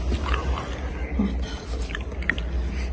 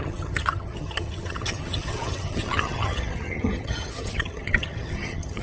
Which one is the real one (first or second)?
first